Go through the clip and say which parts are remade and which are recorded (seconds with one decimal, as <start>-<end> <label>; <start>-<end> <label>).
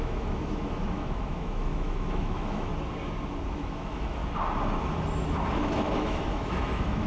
0.0-2.7 remade; 2.7-3.5 recorded; 3.5-4.2 remade; 4.2-5.5 recorded; 5.5-7.1 remade